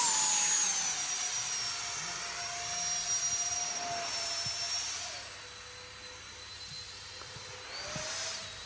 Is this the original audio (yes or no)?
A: yes